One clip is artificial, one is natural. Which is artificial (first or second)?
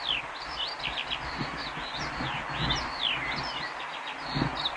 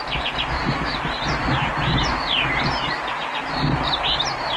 second